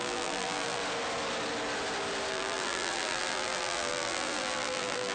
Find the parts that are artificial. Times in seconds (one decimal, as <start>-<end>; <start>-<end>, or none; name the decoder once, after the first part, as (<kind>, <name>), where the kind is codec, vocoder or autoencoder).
0.0-0.8 (vocoder, BigVGAN v2); 2.3-5.1